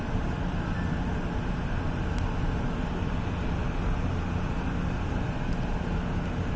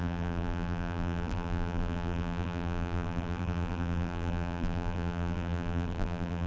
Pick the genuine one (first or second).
first